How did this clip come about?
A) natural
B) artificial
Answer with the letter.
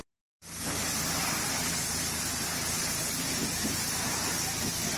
A